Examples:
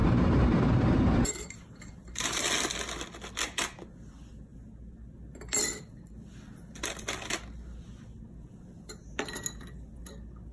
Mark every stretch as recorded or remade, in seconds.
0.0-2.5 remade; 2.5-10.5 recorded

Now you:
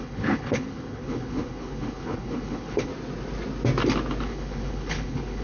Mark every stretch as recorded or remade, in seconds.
0.0-2.9 remade; 2.9-4.2 recorded; 4.2-5.4 remade

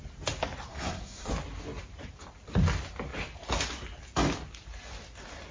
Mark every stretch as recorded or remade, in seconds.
0.0-0.7 recorded; 0.7-1.3 remade; 1.3-5.5 recorded

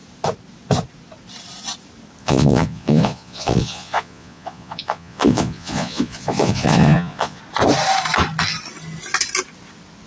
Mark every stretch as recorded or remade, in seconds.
0.0-2.2 recorded; 2.2-7.4 remade; 7.4-10.1 recorded

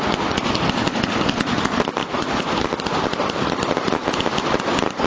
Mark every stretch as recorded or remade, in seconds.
0.0-2.0 recorded; 2.0-3.6 remade; 3.6-5.1 recorded

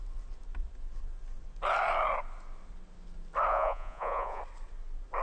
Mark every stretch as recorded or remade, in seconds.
0.0-3.5 recorded; 3.5-4.4 remade; 4.4-5.2 recorded